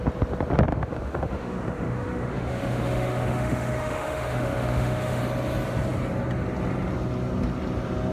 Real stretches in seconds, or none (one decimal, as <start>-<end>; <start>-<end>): 0.0-0.7; 5.2-8.1